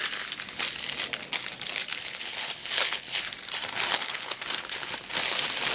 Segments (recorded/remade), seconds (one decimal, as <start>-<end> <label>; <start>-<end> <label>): 0.0-1.9 recorded; 1.9-3.2 remade; 3.2-3.9 recorded; 3.9-4.4 remade; 4.4-5.7 recorded

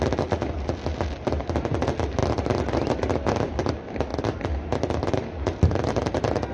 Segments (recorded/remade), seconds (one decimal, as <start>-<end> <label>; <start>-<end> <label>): 0.0-6.5 recorded

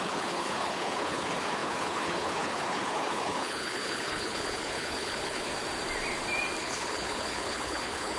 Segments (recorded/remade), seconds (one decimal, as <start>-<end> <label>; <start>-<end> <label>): 0.0-5.5 remade; 5.5-6.6 recorded; 6.6-8.2 remade

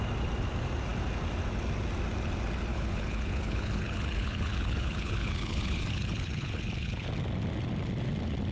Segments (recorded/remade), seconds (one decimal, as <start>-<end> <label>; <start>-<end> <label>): 0.0-2.7 recorded; 2.7-7.1 remade; 7.1-8.5 recorded

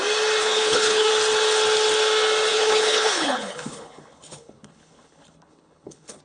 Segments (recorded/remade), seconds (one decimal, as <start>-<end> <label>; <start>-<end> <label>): 0.0-0.4 recorded; 0.4-1.1 remade; 1.1-2.5 recorded; 2.5-6.2 remade

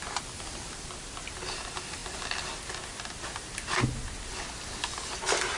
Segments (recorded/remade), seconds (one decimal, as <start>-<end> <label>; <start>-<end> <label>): 0.0-5.6 recorded

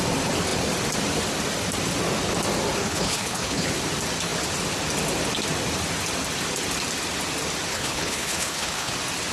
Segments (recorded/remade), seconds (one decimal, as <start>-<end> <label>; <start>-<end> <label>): 0.0-2.8 recorded; 2.8-3.7 remade; 3.7-7.7 recorded; 7.7-8.9 remade; 8.9-9.3 recorded